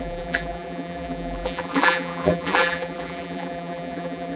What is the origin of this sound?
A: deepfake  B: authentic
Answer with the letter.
A